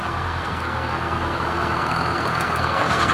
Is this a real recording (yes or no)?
no